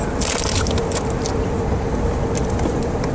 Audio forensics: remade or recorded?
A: recorded